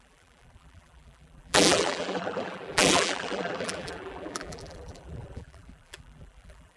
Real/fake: fake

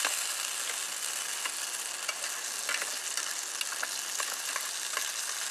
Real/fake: real